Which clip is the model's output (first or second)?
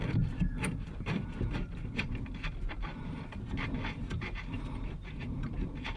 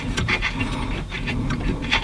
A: first